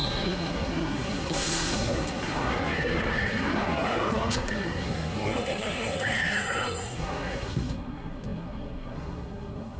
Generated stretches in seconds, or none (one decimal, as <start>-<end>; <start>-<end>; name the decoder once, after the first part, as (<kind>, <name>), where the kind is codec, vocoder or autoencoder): 0.0-9.8 (codec, SNAC)